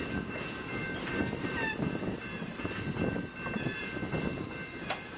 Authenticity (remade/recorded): recorded